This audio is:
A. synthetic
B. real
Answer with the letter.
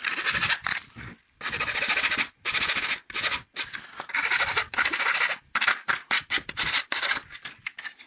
B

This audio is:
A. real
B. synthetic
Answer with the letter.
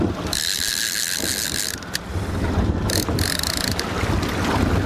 A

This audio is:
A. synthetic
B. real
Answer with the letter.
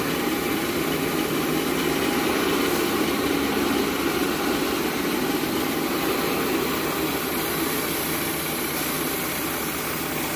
B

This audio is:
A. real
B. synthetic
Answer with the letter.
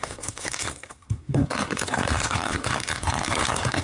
B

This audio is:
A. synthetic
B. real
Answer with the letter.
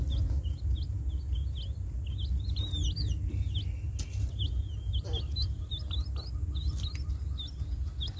B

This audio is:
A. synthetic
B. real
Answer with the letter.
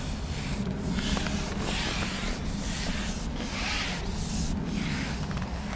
B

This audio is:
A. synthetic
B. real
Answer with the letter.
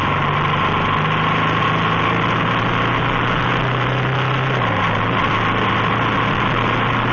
B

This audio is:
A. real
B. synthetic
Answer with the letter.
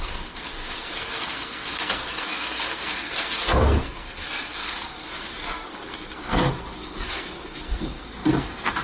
B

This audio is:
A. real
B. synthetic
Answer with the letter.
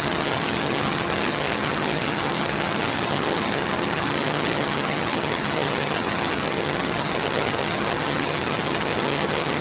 B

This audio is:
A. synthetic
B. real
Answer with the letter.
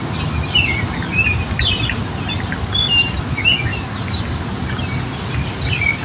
B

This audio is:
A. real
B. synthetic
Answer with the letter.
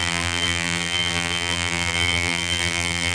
B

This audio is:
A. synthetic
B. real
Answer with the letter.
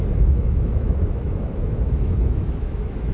A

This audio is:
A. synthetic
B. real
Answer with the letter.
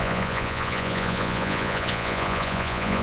A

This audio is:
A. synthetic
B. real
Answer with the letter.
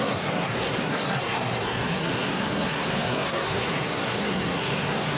A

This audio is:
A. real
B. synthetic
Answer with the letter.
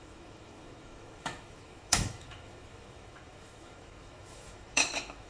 B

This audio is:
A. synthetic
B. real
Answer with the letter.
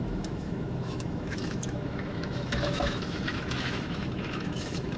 A